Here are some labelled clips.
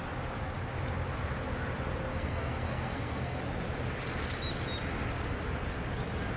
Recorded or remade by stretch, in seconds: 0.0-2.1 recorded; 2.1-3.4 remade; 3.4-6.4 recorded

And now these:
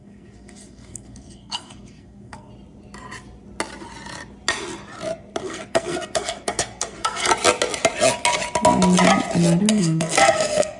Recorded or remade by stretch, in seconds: 0.0-2.5 remade; 2.5-5.4 recorded; 5.4-7.3 remade; 7.3-9.7 recorded; 9.7-10.8 remade